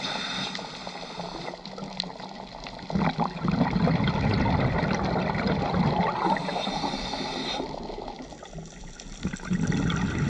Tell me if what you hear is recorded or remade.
recorded